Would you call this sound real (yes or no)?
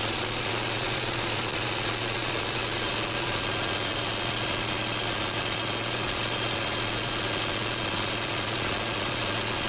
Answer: no